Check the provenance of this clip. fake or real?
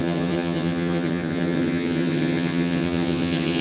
fake